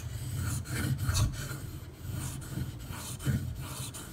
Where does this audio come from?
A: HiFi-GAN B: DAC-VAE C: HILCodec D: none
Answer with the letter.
D